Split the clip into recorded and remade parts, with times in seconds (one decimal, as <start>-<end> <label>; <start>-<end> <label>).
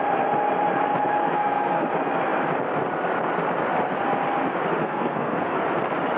0.0-1.2 recorded; 1.2-1.9 remade; 1.9-4.8 recorded; 4.8-5.6 remade; 5.6-6.2 recorded